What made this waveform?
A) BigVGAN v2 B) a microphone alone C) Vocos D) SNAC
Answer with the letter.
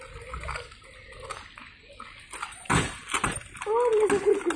B